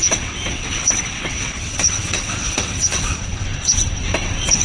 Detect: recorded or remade remade